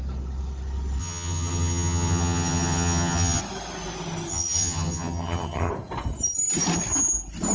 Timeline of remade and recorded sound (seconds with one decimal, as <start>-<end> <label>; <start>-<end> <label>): 0.0-1.0 recorded; 1.0-3.4 remade; 3.4-4.3 recorded; 4.3-5.7 remade; 5.7-7.5 recorded